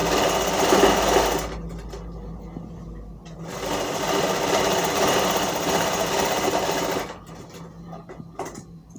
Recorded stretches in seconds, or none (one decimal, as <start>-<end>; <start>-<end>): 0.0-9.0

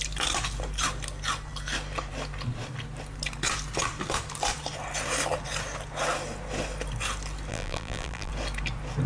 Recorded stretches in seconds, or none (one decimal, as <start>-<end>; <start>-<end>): 0.0-7.5; 8.3-9.1

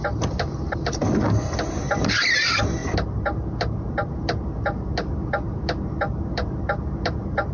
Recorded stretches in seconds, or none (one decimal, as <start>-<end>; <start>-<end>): 1.0-1.7